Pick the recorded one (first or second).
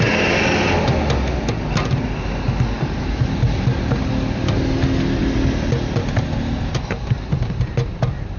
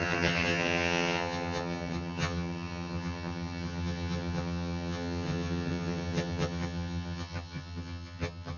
first